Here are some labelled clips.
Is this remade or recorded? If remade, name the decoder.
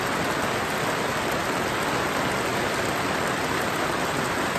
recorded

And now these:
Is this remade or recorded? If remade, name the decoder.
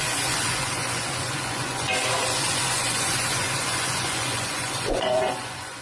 remade, vocoder, Vocos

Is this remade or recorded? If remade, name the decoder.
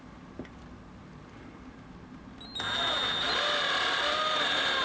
recorded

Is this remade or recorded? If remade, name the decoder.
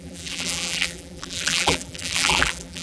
remade, vocoder, BigVGAN v2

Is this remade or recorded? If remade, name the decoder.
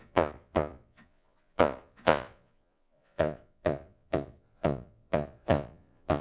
remade, vocoder, Vocos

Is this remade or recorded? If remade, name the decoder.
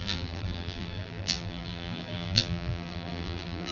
remade, vocoder, BigVGAN v2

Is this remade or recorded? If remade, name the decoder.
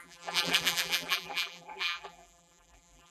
remade, vocoder, BigVGAN v2